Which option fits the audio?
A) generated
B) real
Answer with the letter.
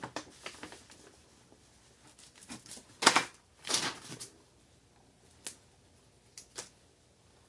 B